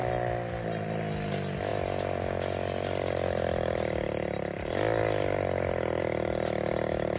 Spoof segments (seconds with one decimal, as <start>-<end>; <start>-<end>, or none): none